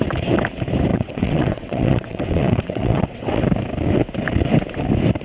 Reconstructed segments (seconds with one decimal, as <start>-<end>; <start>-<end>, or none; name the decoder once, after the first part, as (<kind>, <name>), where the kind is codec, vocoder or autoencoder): 0.9-3.4 (vocoder, WaveNeXt)